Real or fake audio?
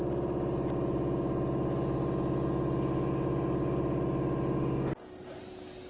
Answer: real